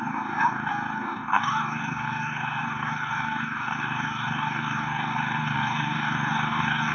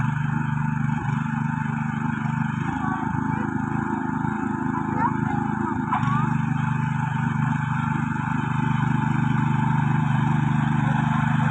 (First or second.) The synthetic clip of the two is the first